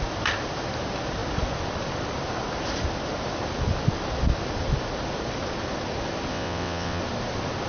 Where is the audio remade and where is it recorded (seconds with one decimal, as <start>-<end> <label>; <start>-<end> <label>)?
0.0-6.3 recorded; 6.3-7.0 remade; 7.0-7.7 recorded